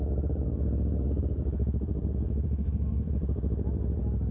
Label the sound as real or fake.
fake